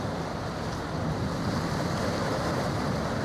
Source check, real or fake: real